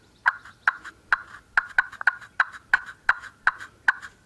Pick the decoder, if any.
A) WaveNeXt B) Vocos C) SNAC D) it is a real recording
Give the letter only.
D